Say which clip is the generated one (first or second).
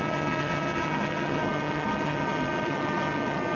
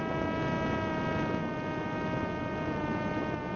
first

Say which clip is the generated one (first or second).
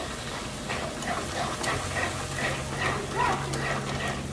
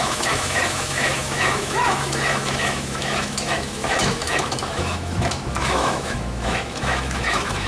second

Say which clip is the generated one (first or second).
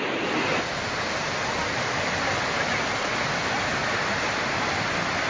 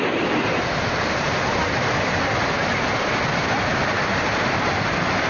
second